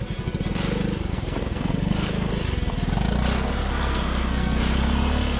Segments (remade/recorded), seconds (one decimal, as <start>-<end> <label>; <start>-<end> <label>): 0.0-1.1 recorded; 1.1-2.3 remade; 2.3-3.6 recorded; 3.6-4.6 remade; 4.6-5.4 recorded